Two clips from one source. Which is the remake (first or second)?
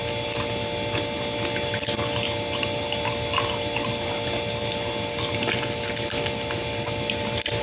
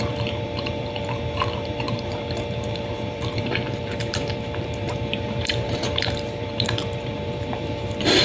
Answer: second